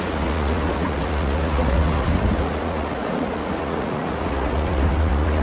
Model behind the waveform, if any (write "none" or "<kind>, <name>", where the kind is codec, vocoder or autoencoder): vocoder, Vocos